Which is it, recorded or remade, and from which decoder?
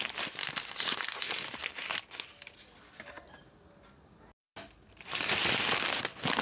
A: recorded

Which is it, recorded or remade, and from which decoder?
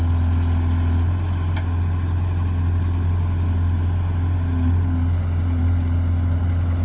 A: recorded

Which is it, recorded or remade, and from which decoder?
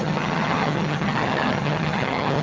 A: remade, vocoder, HiFi-GAN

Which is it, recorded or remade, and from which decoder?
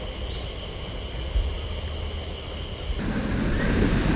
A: recorded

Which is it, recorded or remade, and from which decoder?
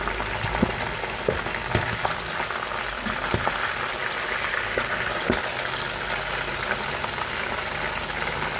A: recorded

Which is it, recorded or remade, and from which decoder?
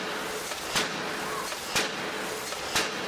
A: recorded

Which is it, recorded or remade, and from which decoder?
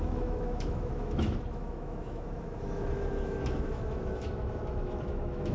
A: remade, autoencoder, DAC-VAE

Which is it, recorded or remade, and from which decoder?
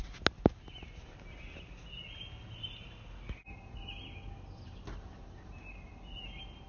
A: recorded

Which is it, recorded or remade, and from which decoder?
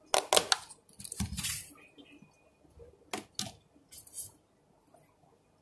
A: recorded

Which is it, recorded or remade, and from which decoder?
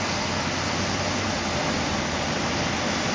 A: recorded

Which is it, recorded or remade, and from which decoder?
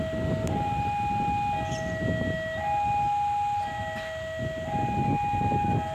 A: recorded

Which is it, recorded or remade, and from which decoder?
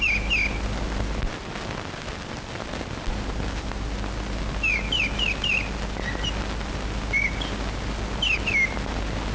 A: recorded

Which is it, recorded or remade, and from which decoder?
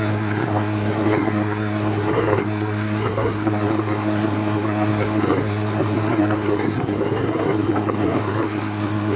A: remade, codec, SNAC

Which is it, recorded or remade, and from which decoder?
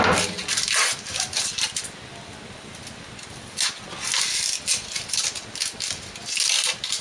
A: recorded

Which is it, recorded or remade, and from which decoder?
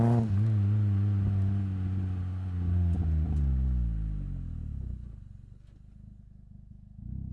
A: recorded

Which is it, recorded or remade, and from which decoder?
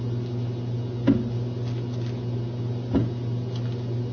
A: recorded